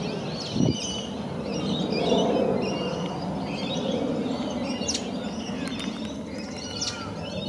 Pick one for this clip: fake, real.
real